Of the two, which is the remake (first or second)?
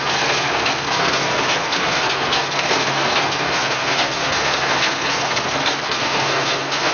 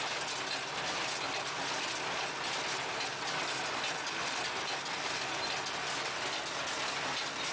first